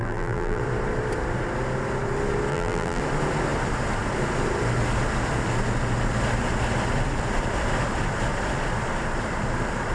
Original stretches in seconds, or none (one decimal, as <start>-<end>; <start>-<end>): 0.6-2.5; 3.0-9.9